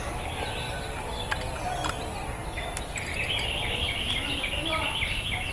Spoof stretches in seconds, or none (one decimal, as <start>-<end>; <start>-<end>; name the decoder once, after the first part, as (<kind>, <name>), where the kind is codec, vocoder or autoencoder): none